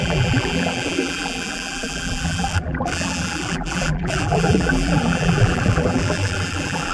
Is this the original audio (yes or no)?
no